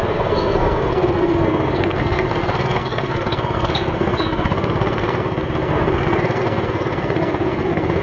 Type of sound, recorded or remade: remade